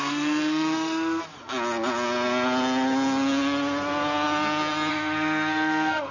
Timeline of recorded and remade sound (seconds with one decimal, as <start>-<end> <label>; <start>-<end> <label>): 0.0-1.2 remade; 1.2-4.9 recorded; 4.9-6.1 remade